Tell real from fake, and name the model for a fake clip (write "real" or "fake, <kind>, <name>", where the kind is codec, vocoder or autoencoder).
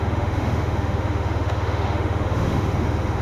fake, autoencoder, DAC-VAE